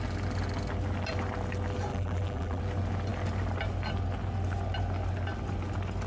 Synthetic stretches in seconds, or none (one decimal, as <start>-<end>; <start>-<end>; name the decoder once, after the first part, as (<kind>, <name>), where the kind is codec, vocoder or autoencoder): 1.9-2.6 (vocoder, BigVGAN v2)

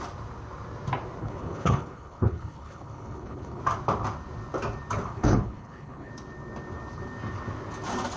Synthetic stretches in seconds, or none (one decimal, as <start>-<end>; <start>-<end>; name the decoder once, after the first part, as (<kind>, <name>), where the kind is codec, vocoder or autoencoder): 1.2-3.6 (codec, HILCodec); 5.1-6.1

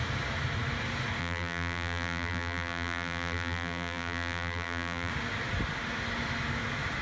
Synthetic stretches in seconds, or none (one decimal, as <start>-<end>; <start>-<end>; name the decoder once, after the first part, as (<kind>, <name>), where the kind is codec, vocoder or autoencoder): 1.2-5.1 (vocoder, BigVGAN v2)

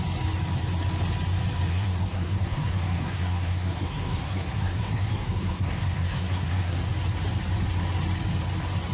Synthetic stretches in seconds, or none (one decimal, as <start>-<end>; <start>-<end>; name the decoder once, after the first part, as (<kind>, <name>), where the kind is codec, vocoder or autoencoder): 1.7-6.8 (codec, SNAC)

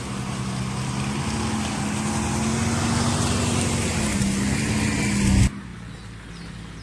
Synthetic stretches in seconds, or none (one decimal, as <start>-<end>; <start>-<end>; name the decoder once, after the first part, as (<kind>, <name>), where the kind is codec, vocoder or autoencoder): none

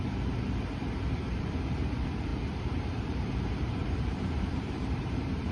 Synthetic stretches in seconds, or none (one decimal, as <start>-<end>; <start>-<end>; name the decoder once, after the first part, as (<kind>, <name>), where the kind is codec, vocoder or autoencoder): 0.0-0.8 (vocoder, BigVGAN v2); 1.4-2.3; 3.0-5.5